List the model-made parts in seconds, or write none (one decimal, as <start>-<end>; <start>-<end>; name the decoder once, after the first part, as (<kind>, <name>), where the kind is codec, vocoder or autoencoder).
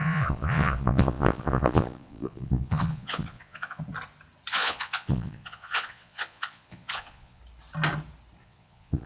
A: 0.0-3.8 (vocoder, Vocos); 4.5-7.4; 8.4-9.1